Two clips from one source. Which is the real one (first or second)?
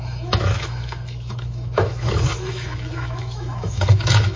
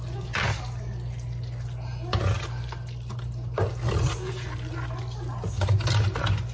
second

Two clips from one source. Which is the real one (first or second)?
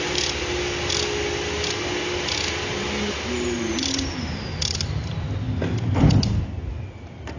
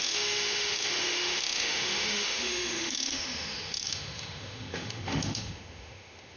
first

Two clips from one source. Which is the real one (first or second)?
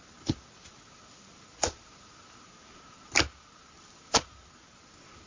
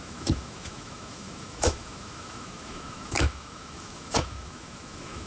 first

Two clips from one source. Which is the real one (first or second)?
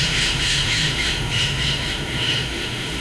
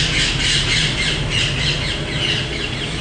second